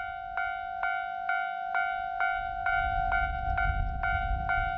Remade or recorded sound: recorded